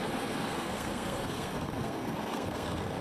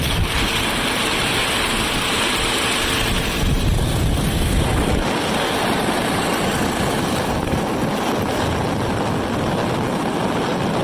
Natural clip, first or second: second